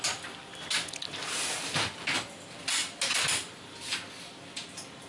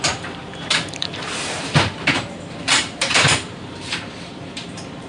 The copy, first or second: second